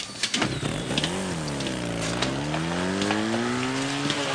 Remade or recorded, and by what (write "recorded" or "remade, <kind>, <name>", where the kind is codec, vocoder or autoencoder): recorded